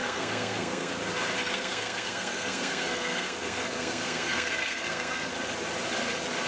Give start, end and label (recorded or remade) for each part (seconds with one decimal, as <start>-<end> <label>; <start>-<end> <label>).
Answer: 0.0-0.9 remade; 0.9-1.4 recorded; 1.4-5.3 remade; 5.3-6.5 recorded